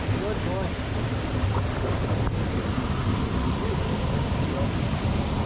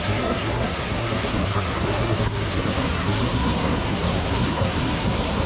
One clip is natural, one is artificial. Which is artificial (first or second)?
second